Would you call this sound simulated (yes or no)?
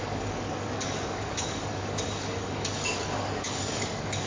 yes